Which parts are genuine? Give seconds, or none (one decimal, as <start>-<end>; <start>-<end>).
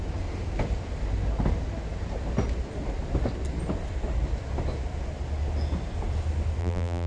0.0-6.6